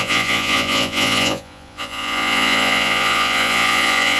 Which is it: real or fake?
fake